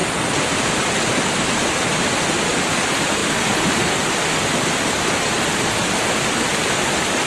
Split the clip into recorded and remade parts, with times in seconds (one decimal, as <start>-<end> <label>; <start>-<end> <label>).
0.0-7.3 recorded